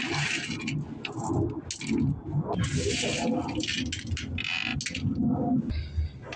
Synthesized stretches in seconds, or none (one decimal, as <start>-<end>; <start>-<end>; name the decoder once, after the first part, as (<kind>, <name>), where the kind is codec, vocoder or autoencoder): none